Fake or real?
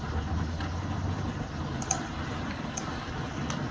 real